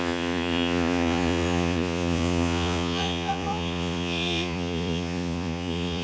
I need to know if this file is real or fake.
fake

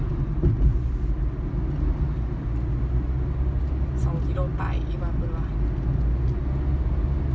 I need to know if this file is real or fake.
real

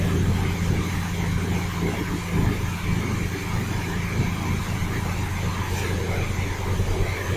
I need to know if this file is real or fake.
real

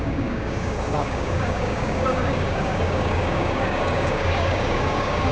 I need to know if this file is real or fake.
fake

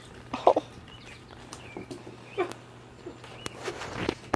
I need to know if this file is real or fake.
fake